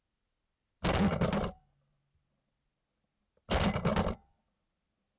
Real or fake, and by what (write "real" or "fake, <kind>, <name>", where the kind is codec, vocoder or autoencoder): fake, vocoder, BigVGAN v2